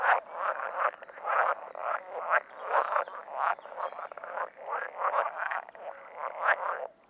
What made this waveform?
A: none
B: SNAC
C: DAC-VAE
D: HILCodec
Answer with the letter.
A